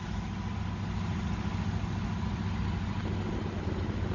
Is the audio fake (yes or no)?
no